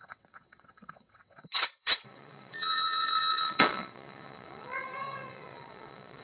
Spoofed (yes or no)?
yes